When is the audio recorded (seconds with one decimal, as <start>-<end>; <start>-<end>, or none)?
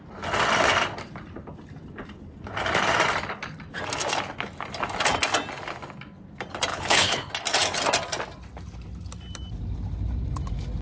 0.0-6.7; 7.3-10.8